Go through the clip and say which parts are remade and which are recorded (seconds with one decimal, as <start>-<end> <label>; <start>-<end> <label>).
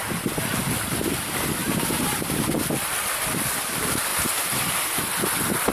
0.0-1.6 recorded; 1.6-2.6 remade; 2.6-4.1 recorded; 4.1-5.0 remade; 5.0-5.7 recorded